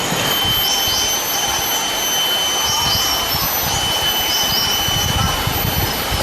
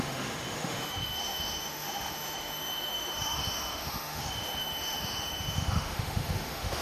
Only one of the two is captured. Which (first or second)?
first